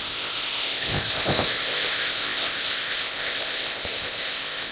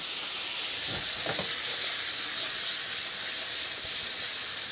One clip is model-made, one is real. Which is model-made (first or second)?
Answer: first